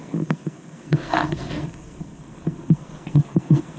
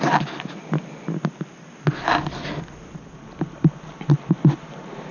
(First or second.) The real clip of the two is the second